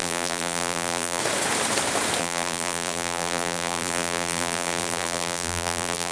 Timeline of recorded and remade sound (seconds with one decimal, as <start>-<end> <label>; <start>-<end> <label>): 0.0-1.2 remade; 1.2-2.2 recorded; 2.2-6.1 remade